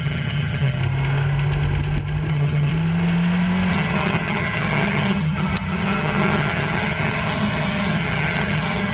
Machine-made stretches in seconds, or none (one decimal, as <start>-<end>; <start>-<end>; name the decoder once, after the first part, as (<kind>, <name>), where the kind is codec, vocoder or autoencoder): 0.0-0.8 (vocoder, HiFi-GAN); 2.3-2.7; 3.7-8.9